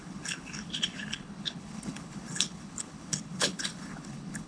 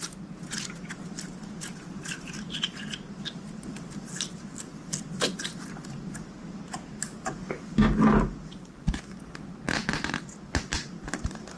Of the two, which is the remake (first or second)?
first